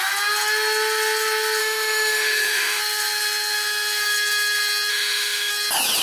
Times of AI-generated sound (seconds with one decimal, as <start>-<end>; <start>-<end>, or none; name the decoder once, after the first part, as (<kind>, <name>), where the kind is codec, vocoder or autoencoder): 1.6-2.8 (autoencoder, DAC-VAE); 4.9-5.5